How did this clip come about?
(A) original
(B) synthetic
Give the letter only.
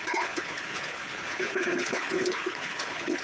B